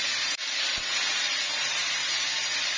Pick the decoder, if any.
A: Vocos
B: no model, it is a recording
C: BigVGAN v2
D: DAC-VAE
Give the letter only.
B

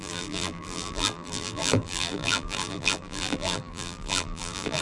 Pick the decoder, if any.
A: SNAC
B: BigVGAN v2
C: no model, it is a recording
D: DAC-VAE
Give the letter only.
B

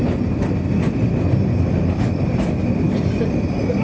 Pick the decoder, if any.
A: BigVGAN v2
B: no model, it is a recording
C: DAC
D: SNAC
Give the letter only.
B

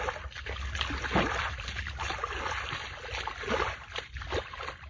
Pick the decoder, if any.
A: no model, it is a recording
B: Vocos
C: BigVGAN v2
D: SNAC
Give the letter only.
A